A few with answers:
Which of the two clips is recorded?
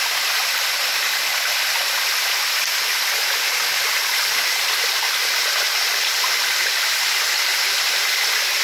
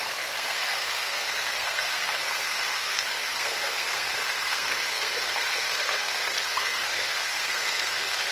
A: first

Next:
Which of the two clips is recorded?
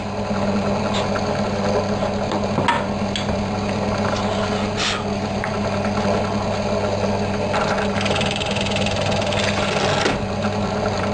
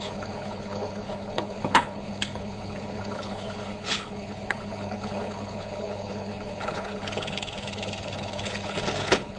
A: first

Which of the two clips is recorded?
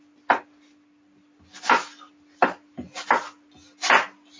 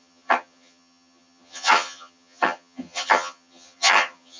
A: first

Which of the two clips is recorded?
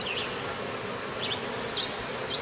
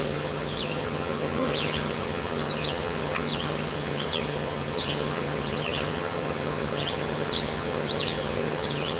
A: first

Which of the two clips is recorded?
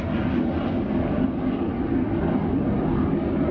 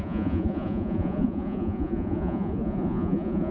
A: first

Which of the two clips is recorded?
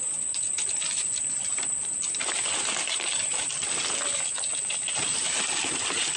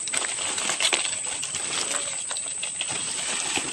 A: first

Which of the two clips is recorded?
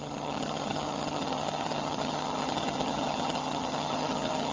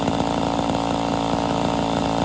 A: second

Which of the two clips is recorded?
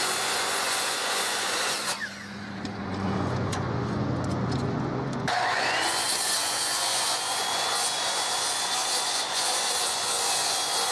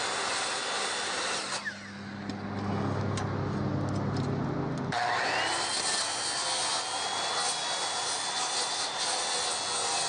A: second